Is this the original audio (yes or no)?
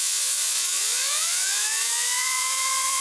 no